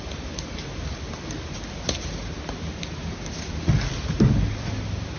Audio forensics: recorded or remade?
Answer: recorded